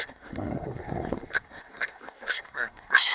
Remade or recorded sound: remade